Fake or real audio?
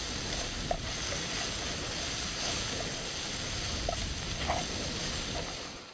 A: real